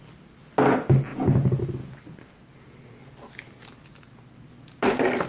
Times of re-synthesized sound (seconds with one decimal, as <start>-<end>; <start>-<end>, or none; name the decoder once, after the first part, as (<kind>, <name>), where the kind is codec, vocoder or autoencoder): 1.1-1.6 (vocoder, Vocos)